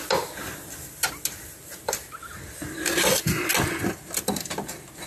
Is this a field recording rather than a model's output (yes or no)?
yes